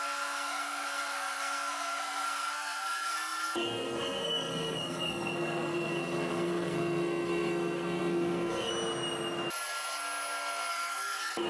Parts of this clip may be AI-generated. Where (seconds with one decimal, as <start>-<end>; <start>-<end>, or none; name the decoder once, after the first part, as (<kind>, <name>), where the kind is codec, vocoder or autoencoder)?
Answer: 0.0-8.7 (codec, SNAC); 10.7-11.5